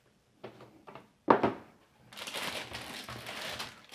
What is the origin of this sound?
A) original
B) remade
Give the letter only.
A